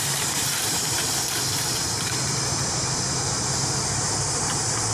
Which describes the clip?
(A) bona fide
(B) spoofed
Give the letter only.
B